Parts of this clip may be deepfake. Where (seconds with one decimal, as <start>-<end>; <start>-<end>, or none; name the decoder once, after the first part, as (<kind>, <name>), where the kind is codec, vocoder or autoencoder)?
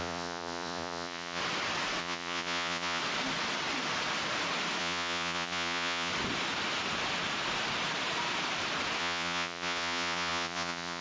0.0-1.4 (vocoder, Vocos); 2.0-3.0; 4.8-6.1; 9.0-11.0